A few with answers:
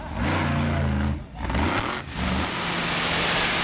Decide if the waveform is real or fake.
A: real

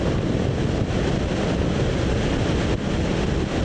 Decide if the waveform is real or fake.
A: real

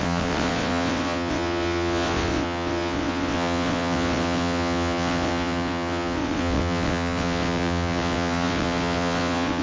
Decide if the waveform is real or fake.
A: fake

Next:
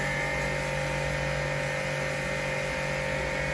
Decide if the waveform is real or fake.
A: real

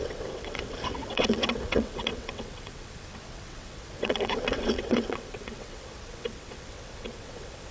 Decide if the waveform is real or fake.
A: fake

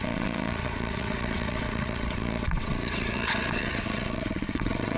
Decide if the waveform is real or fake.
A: fake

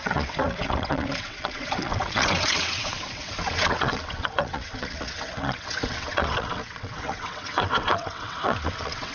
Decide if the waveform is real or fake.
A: fake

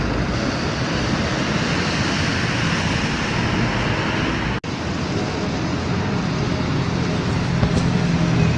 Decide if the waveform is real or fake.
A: real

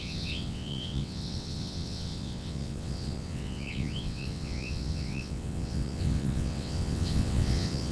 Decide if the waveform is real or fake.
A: fake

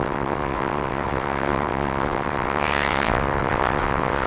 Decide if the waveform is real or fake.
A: fake